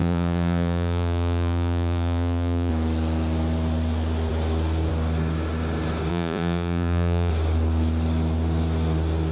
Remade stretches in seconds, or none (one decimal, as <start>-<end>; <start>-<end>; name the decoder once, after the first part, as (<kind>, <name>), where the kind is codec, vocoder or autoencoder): 0.0-2.7 (vocoder, Vocos); 6.1-7.3